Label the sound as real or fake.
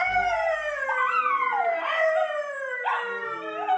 real